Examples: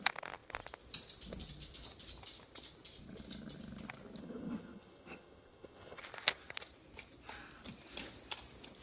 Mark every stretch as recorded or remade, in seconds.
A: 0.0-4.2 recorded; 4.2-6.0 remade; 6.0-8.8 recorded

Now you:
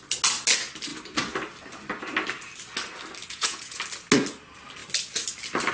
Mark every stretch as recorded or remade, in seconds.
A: 0.0-3.2 recorded; 3.2-3.8 remade; 3.8-5.7 recorded

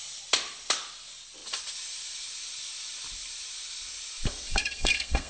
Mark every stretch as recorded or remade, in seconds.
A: 0.0-4.5 recorded; 4.5-5.3 remade

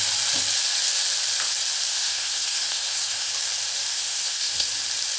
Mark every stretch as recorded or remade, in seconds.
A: 0.0-1.9 recorded; 1.9-3.3 remade; 3.3-3.9 recorded; 3.9-4.7 remade; 4.7-5.2 recorded